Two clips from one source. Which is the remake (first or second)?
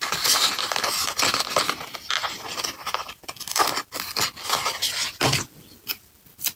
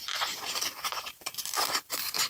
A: second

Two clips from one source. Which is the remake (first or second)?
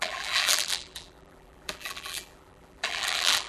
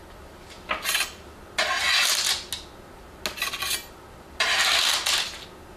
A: first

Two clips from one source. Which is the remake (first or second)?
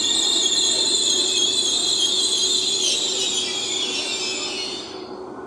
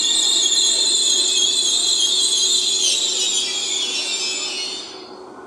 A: first